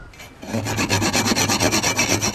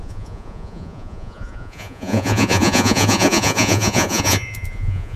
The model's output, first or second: second